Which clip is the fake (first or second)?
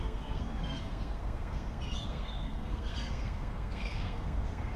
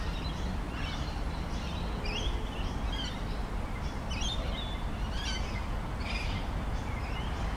first